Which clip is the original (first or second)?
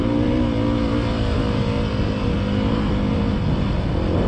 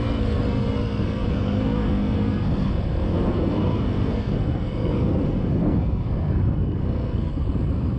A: first